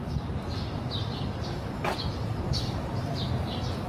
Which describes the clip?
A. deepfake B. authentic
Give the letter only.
A